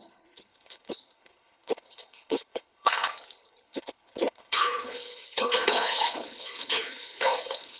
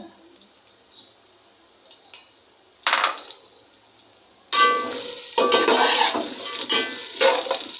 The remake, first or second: first